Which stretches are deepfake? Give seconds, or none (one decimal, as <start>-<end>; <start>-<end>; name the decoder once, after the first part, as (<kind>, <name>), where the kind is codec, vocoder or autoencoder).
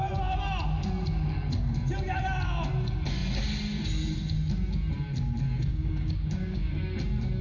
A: 5.7-6.7 (codec, DAC)